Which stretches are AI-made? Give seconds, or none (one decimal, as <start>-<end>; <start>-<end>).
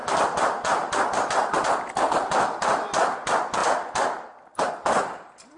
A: none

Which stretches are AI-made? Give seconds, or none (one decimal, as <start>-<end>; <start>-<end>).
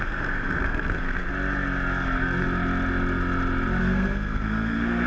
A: 0.0-1.3; 3.8-5.1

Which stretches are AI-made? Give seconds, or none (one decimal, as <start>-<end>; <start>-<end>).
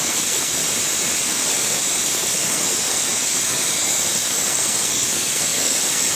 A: 0.0-0.6; 1.2-6.1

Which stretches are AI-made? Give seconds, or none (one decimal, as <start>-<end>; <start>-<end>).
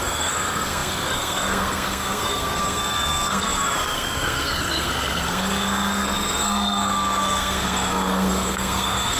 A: 0.0-9.2